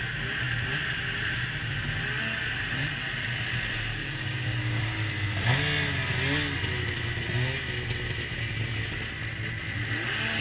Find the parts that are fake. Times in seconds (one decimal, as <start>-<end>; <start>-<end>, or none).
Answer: 3.9-5.1